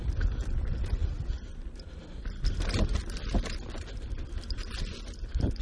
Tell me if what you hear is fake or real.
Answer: real